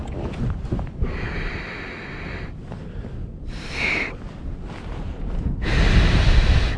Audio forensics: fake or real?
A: real